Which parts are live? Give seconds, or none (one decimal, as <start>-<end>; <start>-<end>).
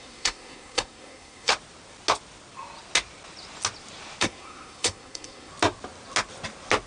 1.5-4.2; 5.5-6.9